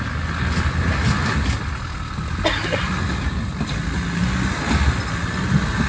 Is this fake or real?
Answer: real